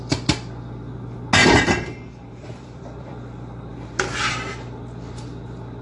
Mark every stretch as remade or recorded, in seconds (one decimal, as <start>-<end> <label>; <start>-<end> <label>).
0.0-1.4 recorded; 1.4-3.1 remade; 3.1-5.8 recorded